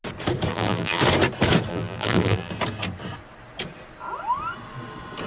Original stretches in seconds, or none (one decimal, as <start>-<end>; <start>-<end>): 0.0-0.5; 1.0-1.7; 2.5-5.3